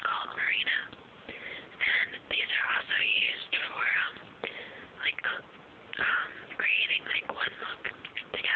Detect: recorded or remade recorded